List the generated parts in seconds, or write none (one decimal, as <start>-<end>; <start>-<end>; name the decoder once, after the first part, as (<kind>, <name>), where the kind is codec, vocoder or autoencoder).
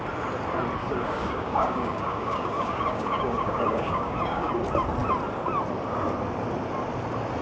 0.8-4.5 (codec, DAC)